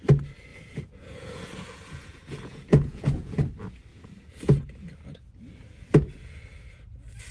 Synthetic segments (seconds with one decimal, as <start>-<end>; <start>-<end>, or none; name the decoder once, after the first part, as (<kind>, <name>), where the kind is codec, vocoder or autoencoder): 0.5-3.4 (vocoder, Vocos); 3.9-4.6